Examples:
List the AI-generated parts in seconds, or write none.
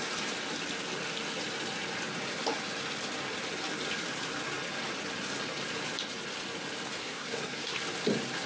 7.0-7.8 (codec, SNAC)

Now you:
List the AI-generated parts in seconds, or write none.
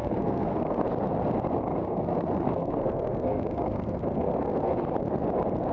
0.0-0.8 (codec, SNAC); 1.8-4.8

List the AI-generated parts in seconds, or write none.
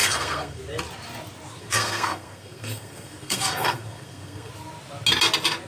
0.0-0.6 (codec, SNAC); 1.6-4.5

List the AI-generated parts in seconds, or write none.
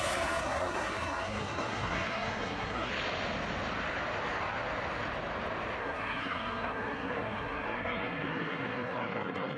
0.0-2.9 (codec, SNAC); 5.8-9.6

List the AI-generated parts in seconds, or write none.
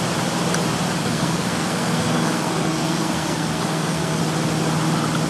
1.0-4.2 (codec, SNAC)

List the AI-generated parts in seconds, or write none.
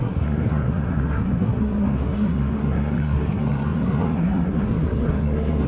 0.0-5.7 (codec, SNAC)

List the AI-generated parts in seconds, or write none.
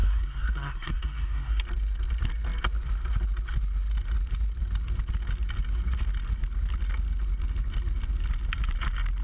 0.0-1.6 (codec, SNAC)